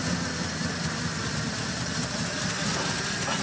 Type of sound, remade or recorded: recorded